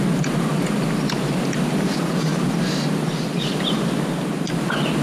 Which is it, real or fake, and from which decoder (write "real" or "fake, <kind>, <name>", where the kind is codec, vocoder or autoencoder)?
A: real